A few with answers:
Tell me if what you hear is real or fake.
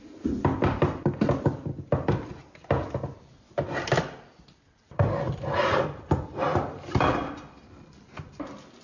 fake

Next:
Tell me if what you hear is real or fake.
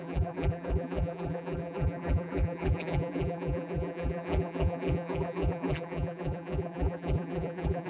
fake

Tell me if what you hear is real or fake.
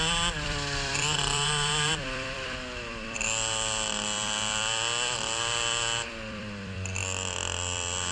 fake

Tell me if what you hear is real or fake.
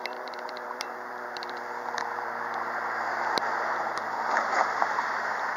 fake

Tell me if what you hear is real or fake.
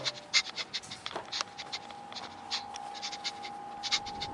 real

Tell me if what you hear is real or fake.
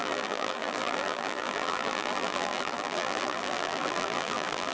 fake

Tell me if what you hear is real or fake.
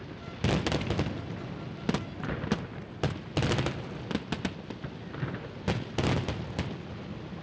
real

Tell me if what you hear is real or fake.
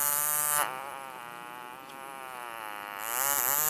real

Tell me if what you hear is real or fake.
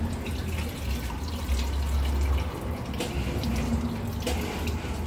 real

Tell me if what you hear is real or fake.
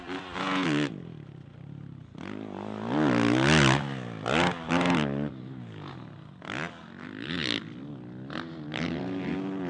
real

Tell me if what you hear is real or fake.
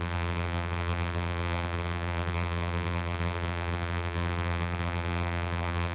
fake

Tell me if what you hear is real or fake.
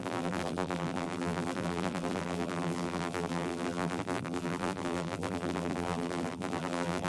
fake